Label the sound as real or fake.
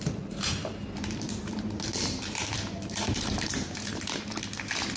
fake